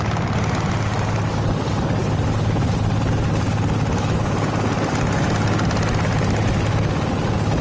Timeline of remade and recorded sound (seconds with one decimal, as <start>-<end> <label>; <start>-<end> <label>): 0.0-7.6 recorded